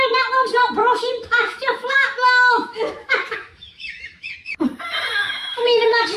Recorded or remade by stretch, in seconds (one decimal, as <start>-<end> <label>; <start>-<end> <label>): 0.0-0.8 recorded; 0.8-4.5 remade; 4.5-5.2 recorded; 5.2-6.2 remade